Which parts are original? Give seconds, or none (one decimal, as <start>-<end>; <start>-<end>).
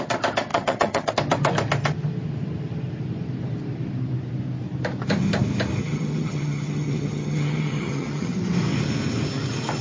0.0-0.5; 1.1-5.8; 8.4-9.8